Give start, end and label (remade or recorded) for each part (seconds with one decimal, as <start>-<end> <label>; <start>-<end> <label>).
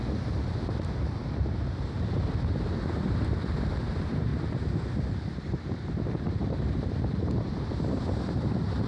0.0-0.7 recorded; 0.7-4.3 remade; 4.3-5.1 recorded; 5.1-8.9 remade